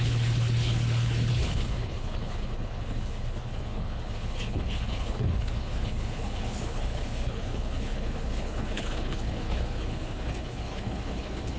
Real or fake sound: fake